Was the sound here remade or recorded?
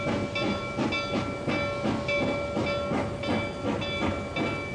recorded